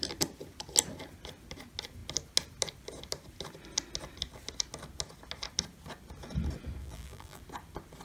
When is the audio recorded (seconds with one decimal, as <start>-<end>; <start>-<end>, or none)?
0.0-6.8; 7.4-8.0